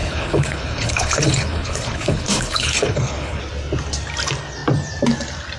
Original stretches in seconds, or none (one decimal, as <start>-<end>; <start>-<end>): 3.4-5.6